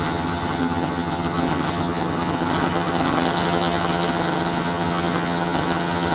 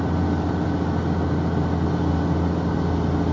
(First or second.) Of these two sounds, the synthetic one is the first